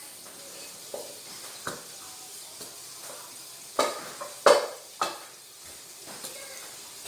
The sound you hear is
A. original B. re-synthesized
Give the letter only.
A